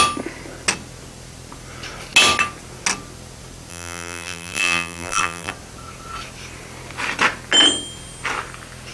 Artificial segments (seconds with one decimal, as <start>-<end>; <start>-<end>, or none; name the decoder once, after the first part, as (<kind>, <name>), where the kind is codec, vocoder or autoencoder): 3.7-5.5 (vocoder, BigVGAN v2)